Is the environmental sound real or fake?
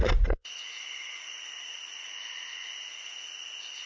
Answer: fake